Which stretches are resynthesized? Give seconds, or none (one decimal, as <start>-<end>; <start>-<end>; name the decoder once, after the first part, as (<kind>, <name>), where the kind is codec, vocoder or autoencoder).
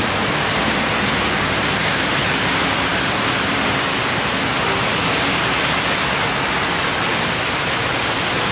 none